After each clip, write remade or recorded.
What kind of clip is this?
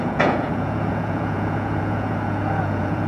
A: remade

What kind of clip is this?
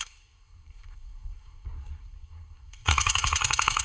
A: remade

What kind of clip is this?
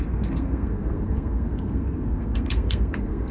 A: remade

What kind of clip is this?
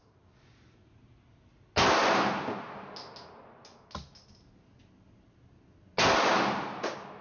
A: recorded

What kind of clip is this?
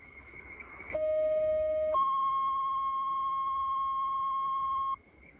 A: remade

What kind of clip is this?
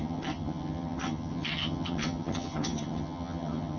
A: remade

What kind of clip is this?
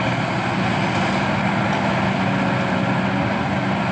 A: recorded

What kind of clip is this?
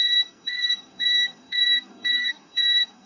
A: remade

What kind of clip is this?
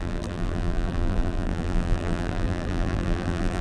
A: remade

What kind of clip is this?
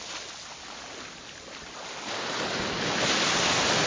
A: recorded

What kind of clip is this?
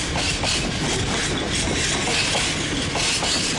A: recorded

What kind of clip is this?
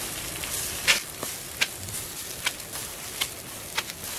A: recorded